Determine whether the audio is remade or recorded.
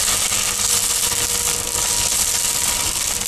recorded